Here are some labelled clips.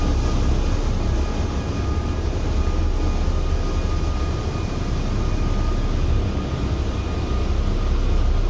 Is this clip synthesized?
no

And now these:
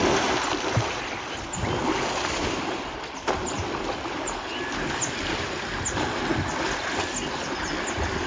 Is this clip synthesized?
no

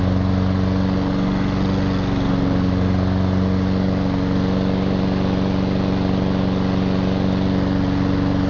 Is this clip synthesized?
no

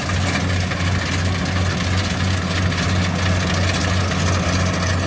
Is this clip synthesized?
no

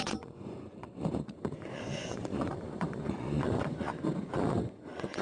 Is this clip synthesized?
yes